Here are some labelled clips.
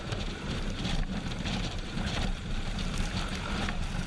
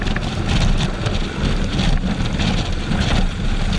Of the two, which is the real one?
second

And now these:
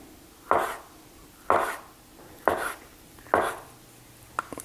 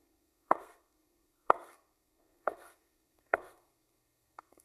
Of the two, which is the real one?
first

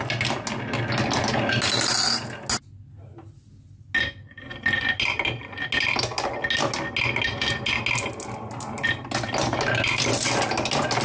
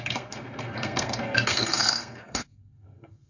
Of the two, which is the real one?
first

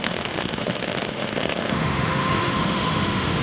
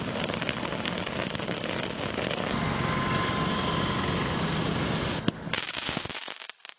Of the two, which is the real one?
second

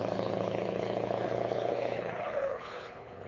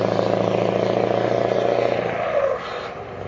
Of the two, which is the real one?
second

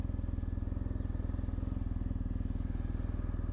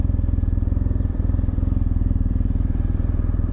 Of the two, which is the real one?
first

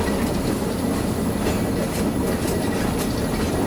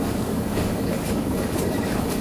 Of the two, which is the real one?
first